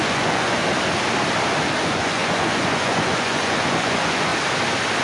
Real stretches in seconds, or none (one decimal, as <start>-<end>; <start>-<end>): 0.6-1.8; 4.3-5.0